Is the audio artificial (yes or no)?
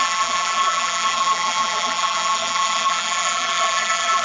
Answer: yes